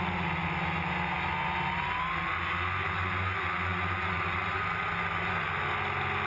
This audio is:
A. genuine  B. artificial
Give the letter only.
A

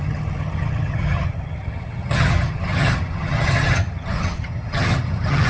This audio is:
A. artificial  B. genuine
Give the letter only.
A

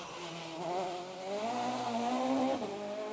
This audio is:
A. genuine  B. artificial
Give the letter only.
A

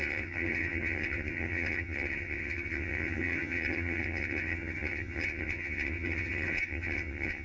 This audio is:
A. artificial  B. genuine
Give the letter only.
A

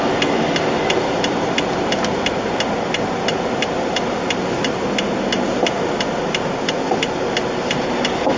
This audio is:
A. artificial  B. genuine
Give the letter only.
B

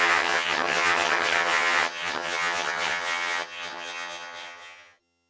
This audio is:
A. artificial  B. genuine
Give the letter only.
A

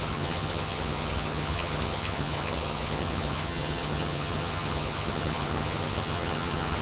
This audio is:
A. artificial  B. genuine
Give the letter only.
A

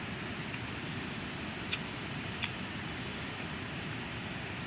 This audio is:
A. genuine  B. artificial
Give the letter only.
A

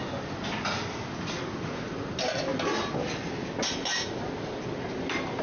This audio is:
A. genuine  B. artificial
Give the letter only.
A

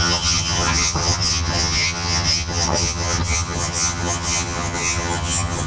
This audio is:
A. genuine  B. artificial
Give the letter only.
B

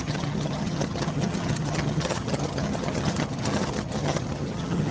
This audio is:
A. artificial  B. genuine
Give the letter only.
A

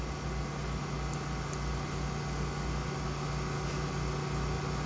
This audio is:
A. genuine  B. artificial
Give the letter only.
A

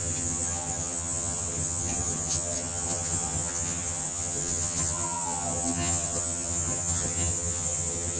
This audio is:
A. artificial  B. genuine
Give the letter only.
A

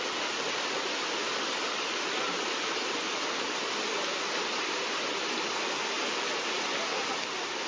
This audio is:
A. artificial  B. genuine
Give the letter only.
B